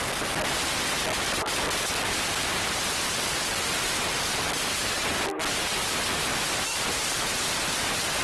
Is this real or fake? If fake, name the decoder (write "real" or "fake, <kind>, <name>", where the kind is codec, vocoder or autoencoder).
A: real